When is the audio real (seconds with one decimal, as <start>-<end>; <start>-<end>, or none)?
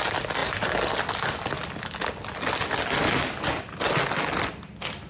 0.0-5.1